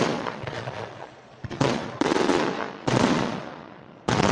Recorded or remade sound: remade